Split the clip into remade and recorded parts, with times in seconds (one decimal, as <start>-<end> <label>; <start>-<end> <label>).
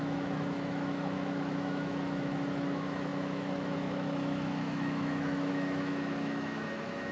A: 0.0-7.1 remade